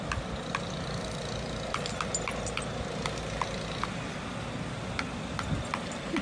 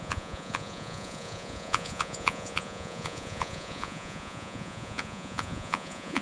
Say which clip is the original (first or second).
first